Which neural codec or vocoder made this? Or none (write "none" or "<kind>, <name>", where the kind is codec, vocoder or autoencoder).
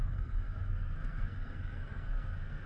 codec, SNAC